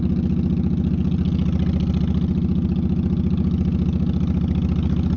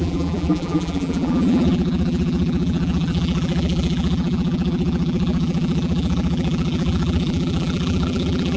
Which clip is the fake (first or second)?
second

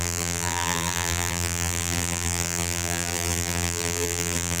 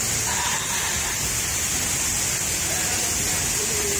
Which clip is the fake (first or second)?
first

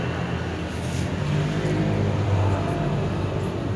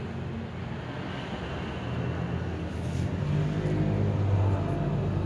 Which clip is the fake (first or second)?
first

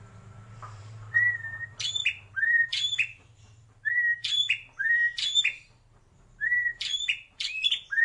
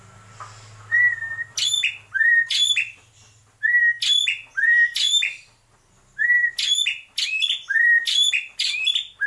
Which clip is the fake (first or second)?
first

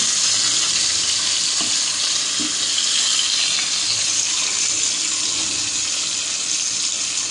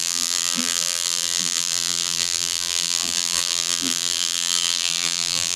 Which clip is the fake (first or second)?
second